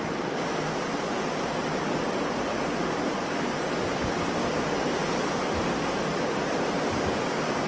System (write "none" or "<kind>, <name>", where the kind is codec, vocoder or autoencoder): none